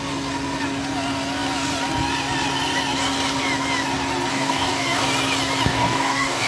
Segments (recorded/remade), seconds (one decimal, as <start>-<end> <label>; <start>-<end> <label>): 0.0-4.3 recorded; 4.3-5.0 remade; 5.0-5.7 recorded; 5.7-6.5 remade